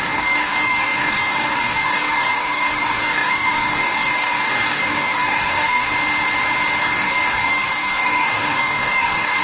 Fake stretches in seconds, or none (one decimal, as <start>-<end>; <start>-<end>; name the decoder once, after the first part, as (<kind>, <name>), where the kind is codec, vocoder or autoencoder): 0.0-5.9 (codec, DAC); 6.8-9.4